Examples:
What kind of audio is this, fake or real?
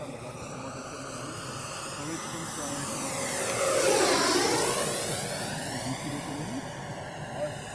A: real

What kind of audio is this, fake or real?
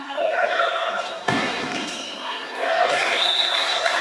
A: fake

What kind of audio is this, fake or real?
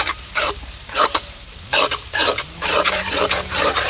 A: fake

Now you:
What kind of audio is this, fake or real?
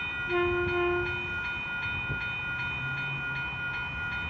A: real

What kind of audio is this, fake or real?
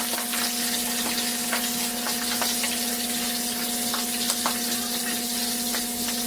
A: real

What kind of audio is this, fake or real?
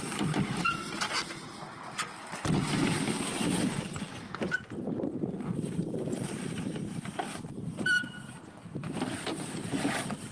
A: real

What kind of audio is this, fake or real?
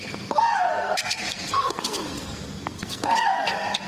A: fake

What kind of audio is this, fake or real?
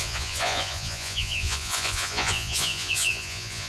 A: fake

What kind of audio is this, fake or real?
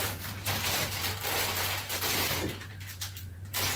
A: fake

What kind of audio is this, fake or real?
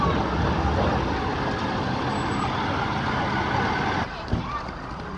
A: real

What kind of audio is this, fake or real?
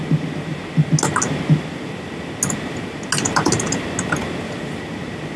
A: real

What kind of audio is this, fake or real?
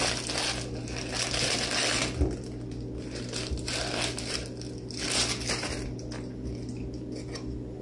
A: real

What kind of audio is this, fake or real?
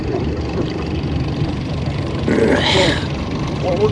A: fake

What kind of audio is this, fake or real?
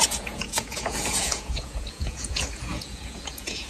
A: fake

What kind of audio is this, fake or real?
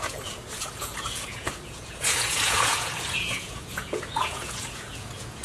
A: fake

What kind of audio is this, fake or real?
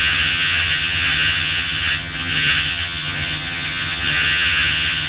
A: fake